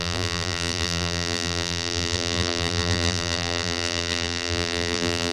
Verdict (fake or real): fake